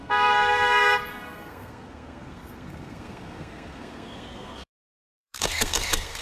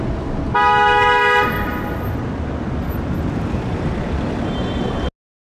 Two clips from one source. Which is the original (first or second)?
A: second